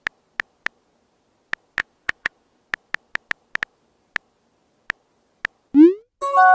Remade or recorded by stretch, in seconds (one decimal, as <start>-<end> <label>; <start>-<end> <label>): 0.0-1.8 recorded; 1.8-2.6 remade; 2.6-6.5 recorded